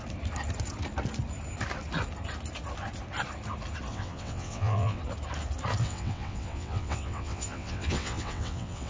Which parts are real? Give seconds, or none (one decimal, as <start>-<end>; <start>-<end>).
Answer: 0.0-3.9; 5.0-5.8